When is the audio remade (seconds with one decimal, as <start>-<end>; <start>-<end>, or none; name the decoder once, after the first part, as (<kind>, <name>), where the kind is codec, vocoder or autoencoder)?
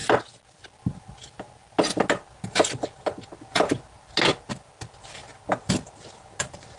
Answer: none